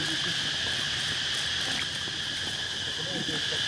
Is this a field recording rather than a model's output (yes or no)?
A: yes